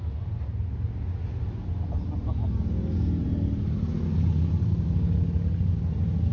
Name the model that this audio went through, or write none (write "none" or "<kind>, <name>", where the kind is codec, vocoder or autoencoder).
none